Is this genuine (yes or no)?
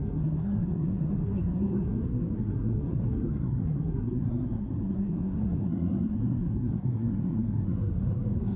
no